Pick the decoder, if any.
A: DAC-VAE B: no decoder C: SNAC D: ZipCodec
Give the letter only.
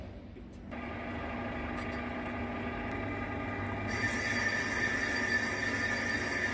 B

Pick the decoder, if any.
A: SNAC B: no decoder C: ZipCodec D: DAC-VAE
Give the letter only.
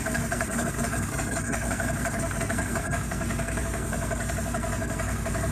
A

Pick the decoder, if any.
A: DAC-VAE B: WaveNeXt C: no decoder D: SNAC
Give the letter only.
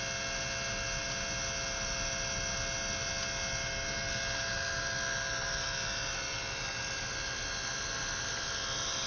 C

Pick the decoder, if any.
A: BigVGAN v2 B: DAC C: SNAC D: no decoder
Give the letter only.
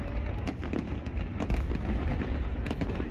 D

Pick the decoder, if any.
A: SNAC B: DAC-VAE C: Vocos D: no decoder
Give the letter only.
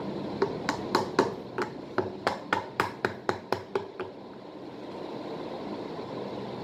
D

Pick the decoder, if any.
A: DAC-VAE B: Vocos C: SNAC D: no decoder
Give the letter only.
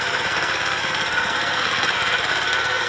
C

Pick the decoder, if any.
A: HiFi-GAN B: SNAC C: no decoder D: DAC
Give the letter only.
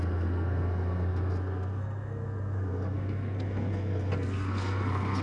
B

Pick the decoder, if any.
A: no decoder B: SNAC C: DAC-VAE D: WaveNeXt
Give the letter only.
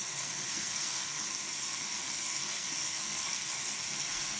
B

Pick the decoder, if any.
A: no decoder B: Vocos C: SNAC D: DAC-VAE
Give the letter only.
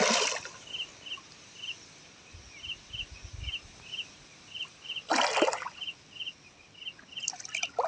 A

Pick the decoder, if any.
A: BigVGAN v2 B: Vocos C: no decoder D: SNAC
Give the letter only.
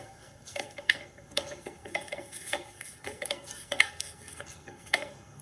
D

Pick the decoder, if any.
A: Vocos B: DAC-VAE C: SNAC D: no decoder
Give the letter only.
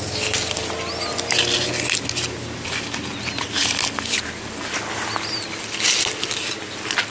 D